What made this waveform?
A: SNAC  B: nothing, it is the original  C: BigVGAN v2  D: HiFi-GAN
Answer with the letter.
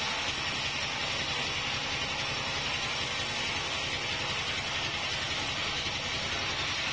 B